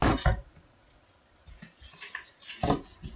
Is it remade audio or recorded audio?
recorded